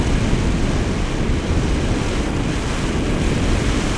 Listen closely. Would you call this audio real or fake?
real